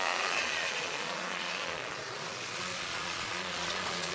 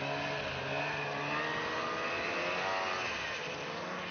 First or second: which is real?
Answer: second